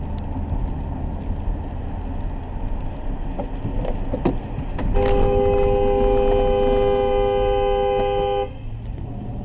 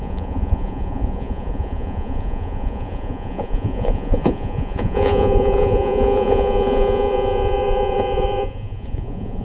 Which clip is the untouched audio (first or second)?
first